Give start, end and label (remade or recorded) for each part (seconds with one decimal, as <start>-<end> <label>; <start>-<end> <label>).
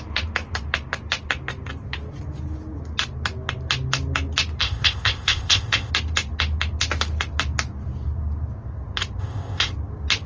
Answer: 0.0-4.6 recorded; 4.6-5.9 remade; 5.9-9.2 recorded; 9.2-9.7 remade; 9.7-10.3 recorded